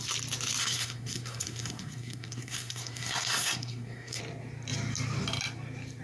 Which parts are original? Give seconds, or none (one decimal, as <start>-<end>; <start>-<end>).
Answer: 0.0-0.6; 4.2-6.0